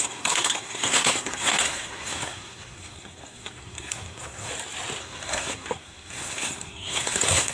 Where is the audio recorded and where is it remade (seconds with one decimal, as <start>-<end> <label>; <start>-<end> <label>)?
0.0-4.5 remade; 4.5-5.0 recorded; 5.0-7.5 remade